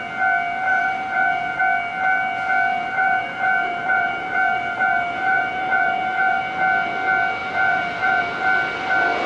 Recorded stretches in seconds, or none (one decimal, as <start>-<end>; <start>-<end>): 0.0-0.7; 1.6-2.7; 6.4-7.4; 8.2-9.3